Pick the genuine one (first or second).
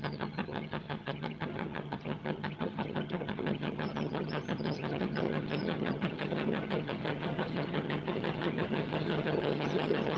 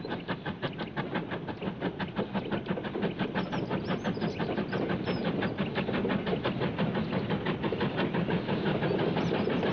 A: second